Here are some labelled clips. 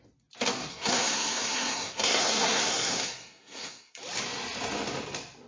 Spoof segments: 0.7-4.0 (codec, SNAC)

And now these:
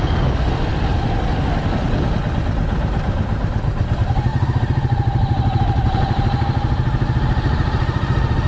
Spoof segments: none

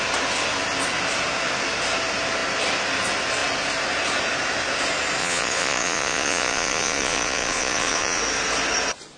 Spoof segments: 5.2-8.2 (vocoder, Vocos)